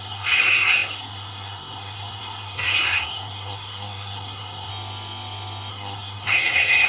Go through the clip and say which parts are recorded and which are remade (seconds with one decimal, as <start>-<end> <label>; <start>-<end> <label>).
0.0-4.7 remade; 4.7-5.7 recorded; 5.7-6.9 remade